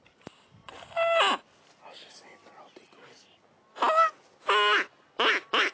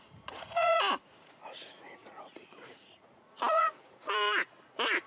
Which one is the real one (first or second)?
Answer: first